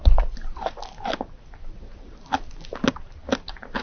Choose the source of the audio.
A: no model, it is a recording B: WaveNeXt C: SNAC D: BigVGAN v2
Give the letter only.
A